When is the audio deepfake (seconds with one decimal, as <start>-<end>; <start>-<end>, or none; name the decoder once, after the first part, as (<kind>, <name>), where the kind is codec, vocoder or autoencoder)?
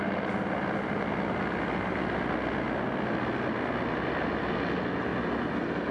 none